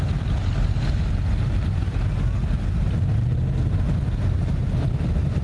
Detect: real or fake real